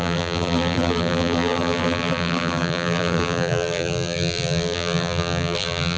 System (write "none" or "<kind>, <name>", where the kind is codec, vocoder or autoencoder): vocoder, BigVGAN v2